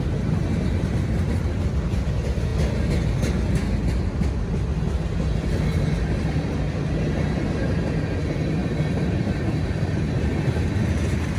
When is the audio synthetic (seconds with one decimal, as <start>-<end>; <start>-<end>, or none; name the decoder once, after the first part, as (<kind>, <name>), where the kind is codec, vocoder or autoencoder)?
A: 8.6-10.7 (vocoder, BigVGAN v2)